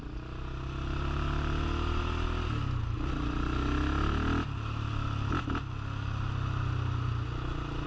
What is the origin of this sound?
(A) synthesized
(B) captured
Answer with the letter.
B